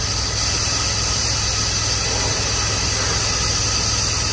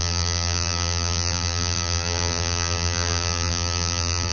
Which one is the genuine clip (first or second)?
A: first